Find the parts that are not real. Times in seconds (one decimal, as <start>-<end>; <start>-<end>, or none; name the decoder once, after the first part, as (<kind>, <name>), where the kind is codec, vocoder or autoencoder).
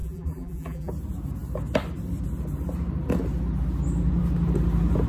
0.0-0.9 (vocoder, BigVGAN v2)